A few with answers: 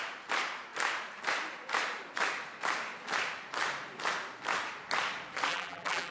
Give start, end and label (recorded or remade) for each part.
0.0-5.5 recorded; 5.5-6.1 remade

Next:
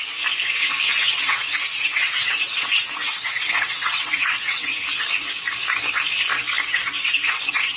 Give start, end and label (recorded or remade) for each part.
0.0-1.0 recorded; 1.0-4.8 remade; 4.8-7.8 recorded

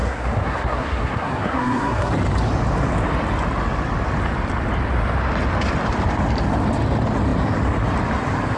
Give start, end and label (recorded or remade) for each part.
0.0-2.1 remade; 2.1-8.6 recorded